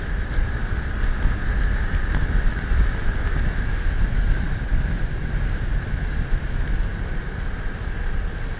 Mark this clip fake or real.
real